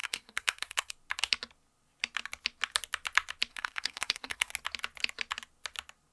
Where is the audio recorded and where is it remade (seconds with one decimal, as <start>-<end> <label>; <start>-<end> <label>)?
0.0-0.9 remade; 0.9-3.5 recorded; 3.5-4.5 remade; 4.5-6.1 recorded